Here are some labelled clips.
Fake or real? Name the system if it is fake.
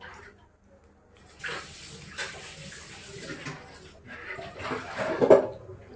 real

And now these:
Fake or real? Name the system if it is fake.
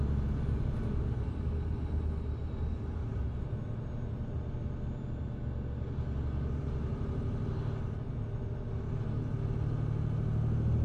real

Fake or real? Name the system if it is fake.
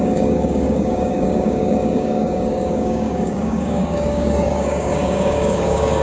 fake, codec, DAC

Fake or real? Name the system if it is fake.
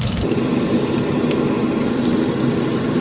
real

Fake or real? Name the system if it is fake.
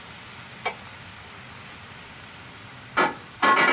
real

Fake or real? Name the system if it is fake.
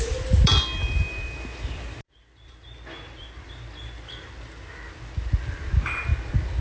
real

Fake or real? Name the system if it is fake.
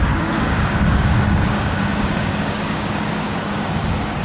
fake, codec, DAC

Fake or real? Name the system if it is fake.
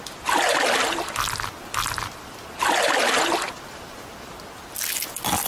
real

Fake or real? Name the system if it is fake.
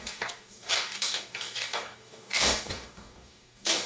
fake, codec, DAC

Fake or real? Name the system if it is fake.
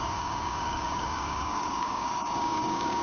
fake, codec, DAC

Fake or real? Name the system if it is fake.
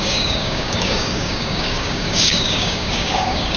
fake, codec, DAC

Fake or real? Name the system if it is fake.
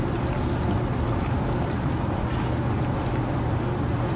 real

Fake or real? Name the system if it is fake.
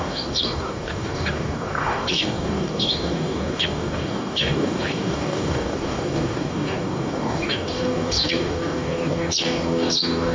fake, codec, DAC